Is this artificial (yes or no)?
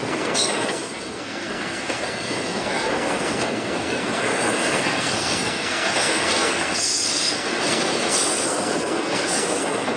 yes